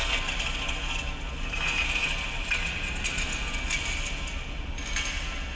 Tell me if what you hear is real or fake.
real